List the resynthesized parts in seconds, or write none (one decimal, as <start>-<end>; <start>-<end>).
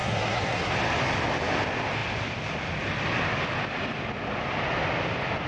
0.0-0.7